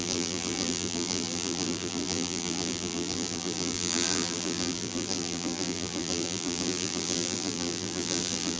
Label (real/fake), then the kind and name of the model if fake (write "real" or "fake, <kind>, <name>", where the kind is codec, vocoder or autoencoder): fake, vocoder, BigVGAN v2